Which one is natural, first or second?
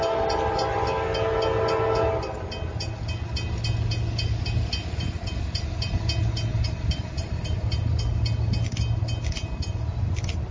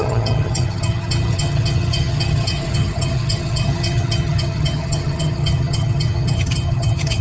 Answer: first